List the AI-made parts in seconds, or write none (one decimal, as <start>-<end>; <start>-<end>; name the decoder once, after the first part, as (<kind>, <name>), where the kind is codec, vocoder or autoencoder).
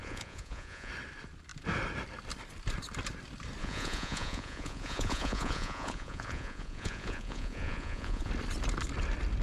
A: 0.0-0.9 (vocoder, Vocos); 3.6-8.3